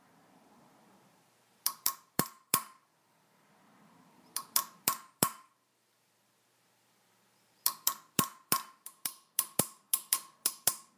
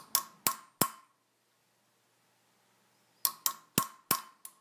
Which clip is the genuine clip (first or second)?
second